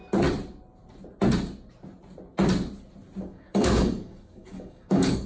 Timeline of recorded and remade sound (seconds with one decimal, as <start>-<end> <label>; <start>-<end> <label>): 0.0-3.2 recorded; 3.2-5.3 remade